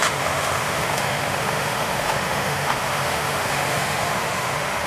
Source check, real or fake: fake